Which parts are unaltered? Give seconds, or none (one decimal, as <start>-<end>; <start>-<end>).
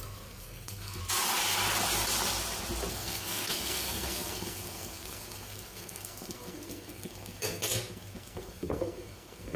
1.0-2.9